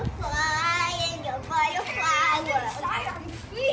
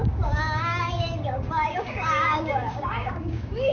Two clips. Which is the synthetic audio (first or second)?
second